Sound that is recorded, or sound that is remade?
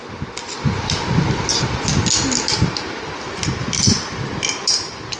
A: recorded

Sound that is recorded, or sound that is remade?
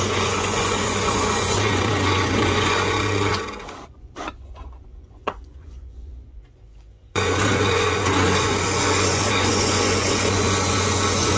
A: remade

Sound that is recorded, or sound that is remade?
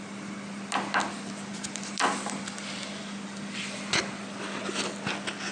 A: recorded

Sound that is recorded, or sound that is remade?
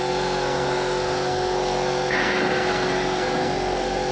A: remade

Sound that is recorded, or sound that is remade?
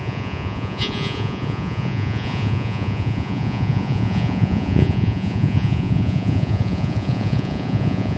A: remade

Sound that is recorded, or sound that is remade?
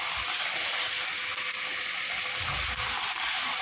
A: recorded